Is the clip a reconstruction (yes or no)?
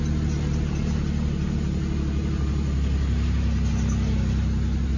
no